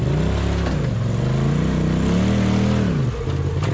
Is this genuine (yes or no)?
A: yes